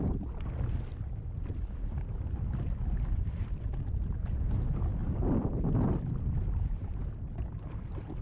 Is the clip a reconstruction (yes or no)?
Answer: no